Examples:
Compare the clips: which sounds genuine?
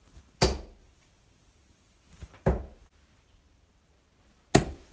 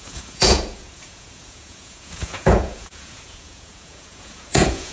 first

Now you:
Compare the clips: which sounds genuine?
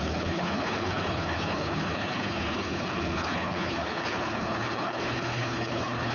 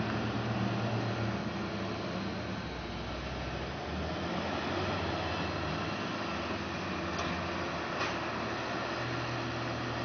second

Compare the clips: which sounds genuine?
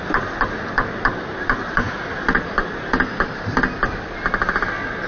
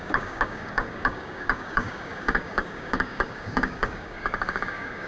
first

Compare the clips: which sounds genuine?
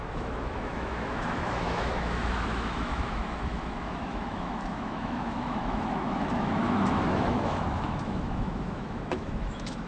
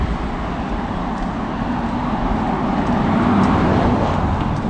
second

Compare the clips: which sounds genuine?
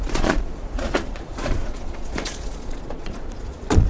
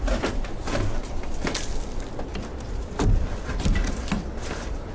second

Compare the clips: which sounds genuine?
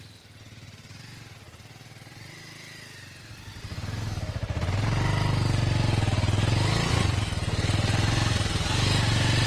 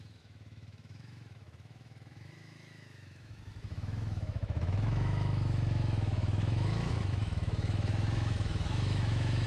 first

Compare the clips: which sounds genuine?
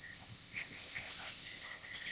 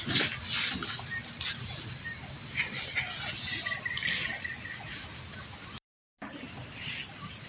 second